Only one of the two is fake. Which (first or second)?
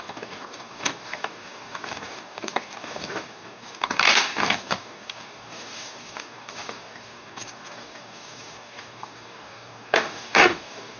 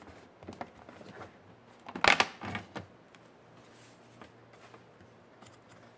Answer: first